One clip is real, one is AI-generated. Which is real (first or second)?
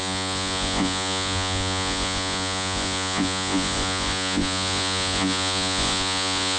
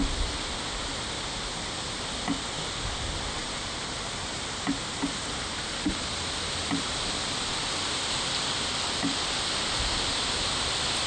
second